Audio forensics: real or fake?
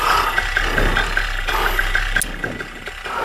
real